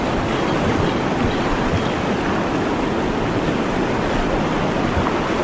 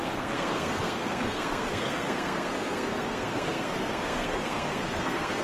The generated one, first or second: second